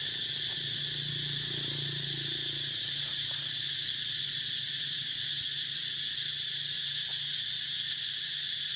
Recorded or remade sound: recorded